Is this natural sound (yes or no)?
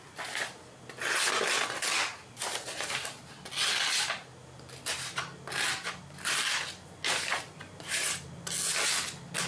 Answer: yes